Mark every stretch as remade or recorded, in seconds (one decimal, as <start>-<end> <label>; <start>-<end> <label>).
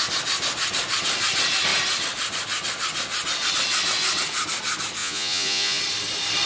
0.0-5.0 recorded; 5.0-5.8 remade; 5.8-6.5 recorded